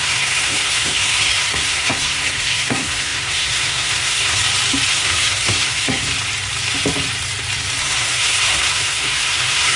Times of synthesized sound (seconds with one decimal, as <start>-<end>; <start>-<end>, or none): 0.0-4.4; 4.9-6.1; 7.8-9.8